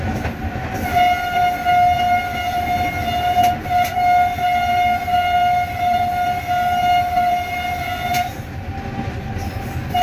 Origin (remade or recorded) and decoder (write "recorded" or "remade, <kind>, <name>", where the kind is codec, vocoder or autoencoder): recorded